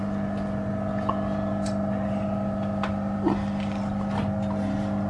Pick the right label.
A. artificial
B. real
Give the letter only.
B